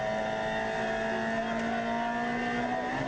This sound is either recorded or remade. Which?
recorded